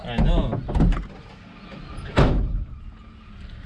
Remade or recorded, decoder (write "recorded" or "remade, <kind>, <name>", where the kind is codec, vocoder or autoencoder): recorded